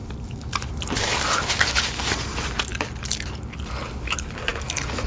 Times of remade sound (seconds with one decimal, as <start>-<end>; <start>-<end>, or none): 0.0-1.5